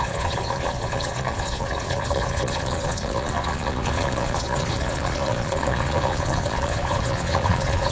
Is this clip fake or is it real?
fake